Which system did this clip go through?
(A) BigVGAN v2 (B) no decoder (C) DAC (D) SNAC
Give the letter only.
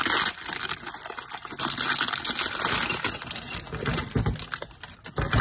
B